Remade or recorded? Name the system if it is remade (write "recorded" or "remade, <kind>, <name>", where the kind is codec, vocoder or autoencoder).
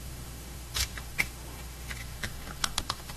remade, autoencoder, DAC-VAE